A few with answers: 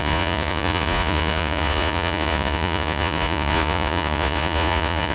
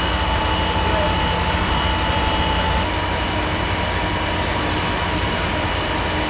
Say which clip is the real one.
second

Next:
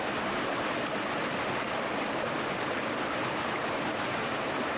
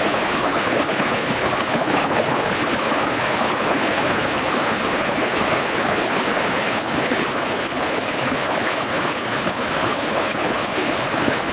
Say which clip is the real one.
first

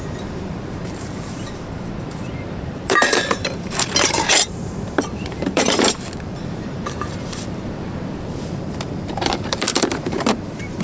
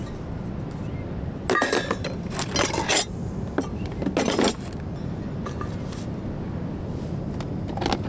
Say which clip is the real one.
second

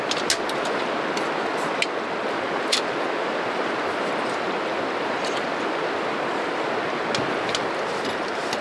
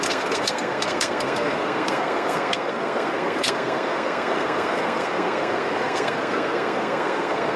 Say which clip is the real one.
first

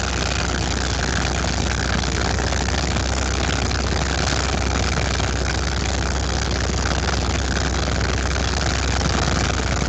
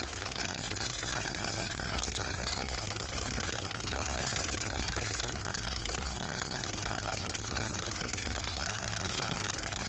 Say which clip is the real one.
first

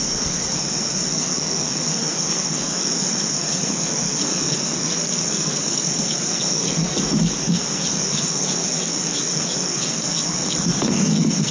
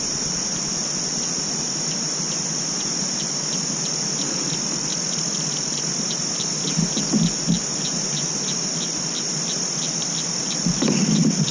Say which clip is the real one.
second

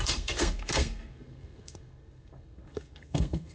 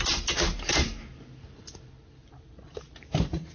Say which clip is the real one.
second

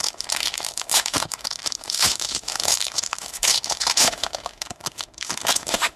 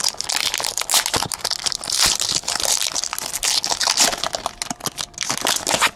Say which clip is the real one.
second